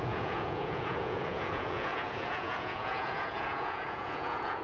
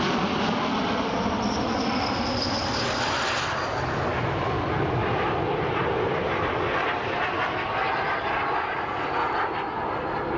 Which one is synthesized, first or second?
first